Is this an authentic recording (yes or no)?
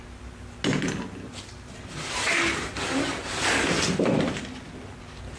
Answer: yes